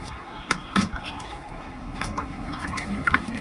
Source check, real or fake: fake